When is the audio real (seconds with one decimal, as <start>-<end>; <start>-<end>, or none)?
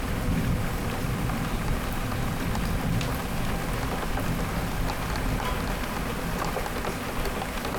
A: 3.2-6.2